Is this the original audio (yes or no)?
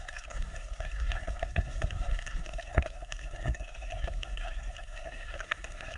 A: no